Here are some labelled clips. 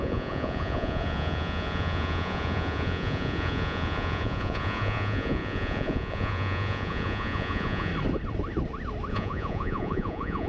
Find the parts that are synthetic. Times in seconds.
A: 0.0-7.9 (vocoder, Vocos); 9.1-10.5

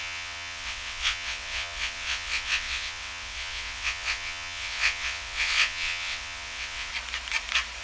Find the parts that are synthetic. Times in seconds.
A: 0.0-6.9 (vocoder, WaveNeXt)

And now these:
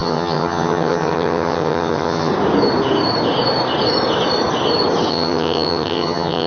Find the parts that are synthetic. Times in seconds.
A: 0.0-2.3 (vocoder, HiFi-GAN); 5.1-6.5

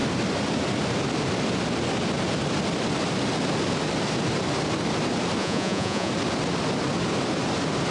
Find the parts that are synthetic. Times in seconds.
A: 5.4-6.1 (vocoder, Vocos)

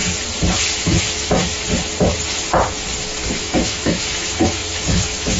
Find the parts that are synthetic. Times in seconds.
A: 0.8-1.4 (autoencoder, DAC-VAE); 3.4-5.4

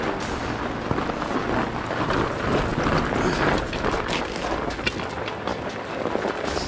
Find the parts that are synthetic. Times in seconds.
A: none